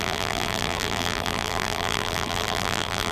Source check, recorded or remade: remade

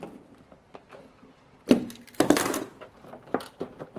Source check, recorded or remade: recorded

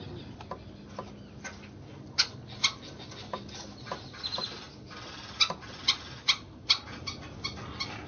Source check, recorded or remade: recorded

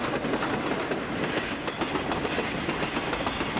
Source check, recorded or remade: recorded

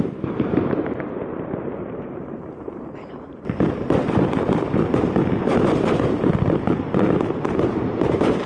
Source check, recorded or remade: remade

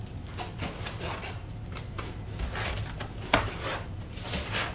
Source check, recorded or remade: recorded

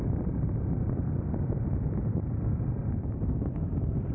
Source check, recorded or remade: remade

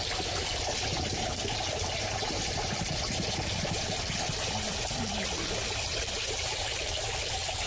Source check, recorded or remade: remade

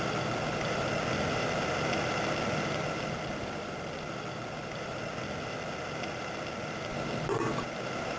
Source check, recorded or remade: recorded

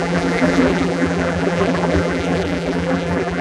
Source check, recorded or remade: remade